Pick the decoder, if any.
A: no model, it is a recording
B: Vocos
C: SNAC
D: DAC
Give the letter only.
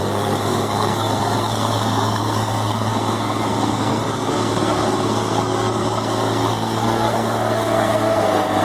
C